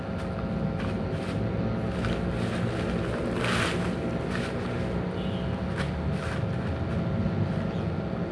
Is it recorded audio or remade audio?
recorded